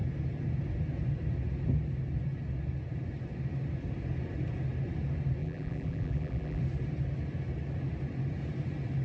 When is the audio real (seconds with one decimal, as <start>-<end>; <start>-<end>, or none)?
0.0-5.4; 6.6-9.0